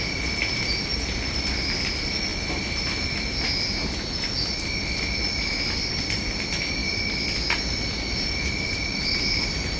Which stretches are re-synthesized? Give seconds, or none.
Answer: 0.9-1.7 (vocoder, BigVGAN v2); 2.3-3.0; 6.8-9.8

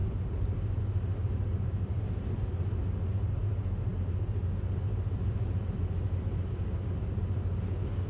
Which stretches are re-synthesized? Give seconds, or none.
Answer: 0.0-0.8 (vocoder, BigVGAN v2)

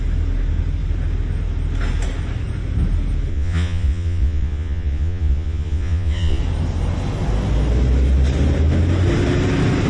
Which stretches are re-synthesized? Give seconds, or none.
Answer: 3.3-6.4 (vocoder, Vocos)

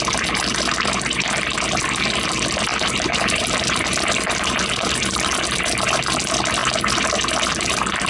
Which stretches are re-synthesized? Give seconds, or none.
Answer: 2.7-4.1 (vocoder, BigVGAN v2)